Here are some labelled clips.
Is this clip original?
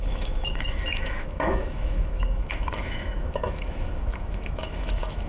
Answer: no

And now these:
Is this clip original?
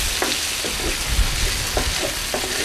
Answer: yes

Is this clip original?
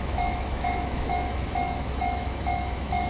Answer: no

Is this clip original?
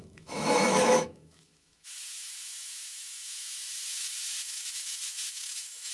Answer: no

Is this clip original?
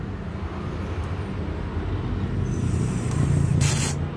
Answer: yes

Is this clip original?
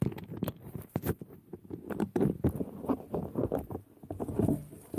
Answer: yes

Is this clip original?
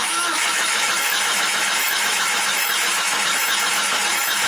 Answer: no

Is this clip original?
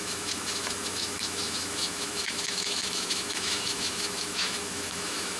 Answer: no